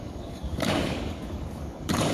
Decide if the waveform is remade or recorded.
remade